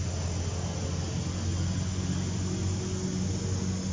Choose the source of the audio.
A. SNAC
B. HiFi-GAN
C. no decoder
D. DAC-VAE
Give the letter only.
C